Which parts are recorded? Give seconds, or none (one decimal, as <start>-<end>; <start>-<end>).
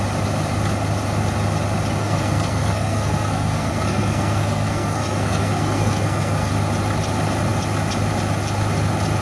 0.0-2.0; 6.5-9.2